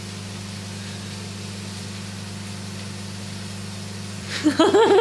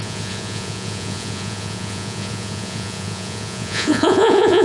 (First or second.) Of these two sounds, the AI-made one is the second